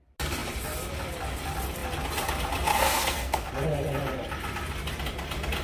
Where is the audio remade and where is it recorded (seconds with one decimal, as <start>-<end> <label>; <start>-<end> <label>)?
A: 0.0-2.7 recorded; 2.7-3.5 remade; 3.5-5.6 recorded